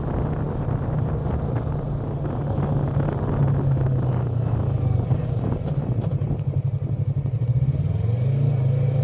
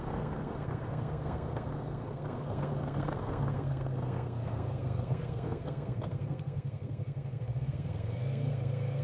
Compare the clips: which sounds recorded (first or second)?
first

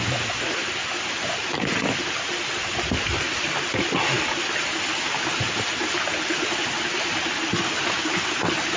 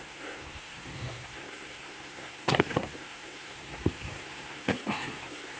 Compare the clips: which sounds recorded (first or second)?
first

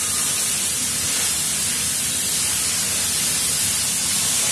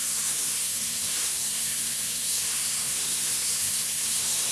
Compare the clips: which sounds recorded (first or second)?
first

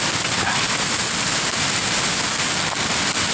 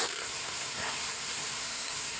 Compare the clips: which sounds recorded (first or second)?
first